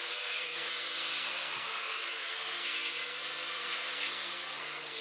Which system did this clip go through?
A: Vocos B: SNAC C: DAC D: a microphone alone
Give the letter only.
B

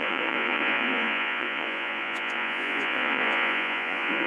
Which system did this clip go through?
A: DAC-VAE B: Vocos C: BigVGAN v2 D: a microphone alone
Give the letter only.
B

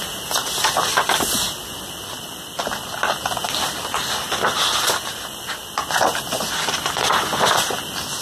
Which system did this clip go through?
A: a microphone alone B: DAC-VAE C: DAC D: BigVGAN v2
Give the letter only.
A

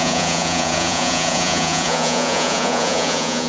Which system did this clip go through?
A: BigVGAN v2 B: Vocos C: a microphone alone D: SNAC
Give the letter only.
B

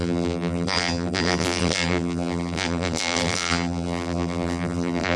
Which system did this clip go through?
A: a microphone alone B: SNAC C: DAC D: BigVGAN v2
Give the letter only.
D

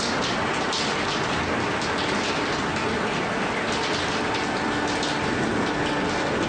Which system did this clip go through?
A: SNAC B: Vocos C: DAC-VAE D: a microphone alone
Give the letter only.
D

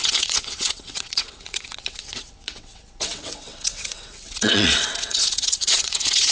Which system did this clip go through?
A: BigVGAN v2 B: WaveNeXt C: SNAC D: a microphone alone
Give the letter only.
B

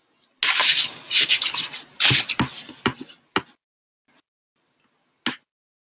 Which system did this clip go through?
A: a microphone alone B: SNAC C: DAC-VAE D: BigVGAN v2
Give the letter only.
A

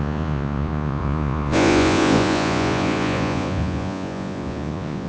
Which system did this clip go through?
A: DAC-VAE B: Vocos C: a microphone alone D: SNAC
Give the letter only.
B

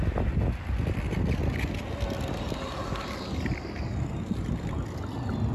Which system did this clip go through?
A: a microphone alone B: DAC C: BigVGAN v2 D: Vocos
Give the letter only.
A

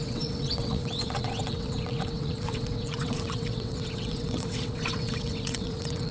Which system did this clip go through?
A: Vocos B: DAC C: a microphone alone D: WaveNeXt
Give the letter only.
D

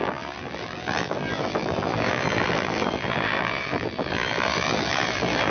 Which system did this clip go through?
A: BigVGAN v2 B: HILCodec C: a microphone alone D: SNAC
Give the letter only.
A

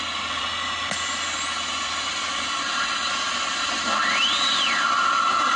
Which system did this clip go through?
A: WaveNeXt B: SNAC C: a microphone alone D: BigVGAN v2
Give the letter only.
C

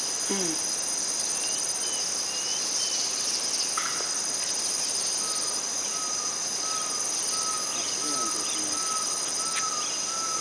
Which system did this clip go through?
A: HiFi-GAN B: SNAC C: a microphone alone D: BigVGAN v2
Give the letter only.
C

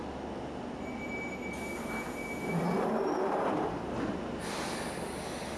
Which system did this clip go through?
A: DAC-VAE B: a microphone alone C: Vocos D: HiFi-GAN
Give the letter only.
B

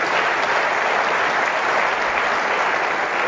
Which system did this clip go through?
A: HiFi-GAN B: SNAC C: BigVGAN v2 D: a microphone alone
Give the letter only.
D